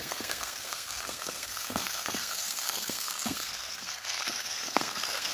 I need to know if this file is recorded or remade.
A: remade